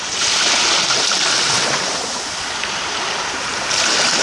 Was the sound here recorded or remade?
remade